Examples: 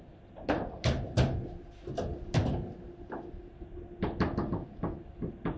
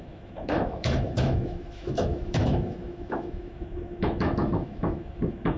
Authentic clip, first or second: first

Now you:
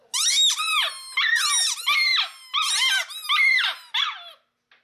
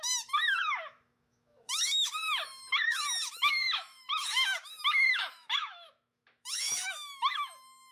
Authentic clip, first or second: first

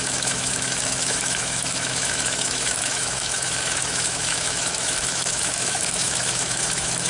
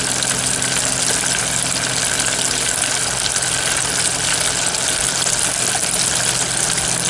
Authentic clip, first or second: second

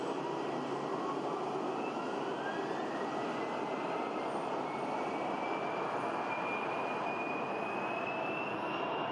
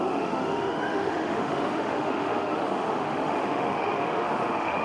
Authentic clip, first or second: first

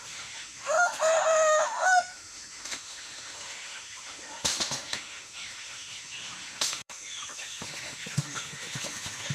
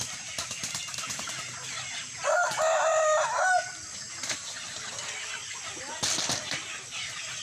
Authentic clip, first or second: second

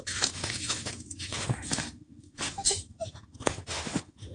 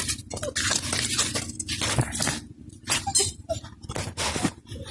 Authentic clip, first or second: second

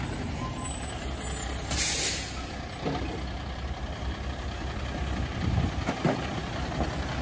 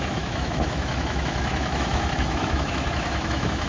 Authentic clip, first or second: first